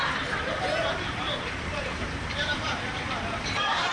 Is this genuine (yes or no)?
no